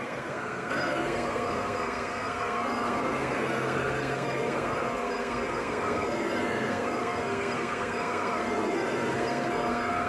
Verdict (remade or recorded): remade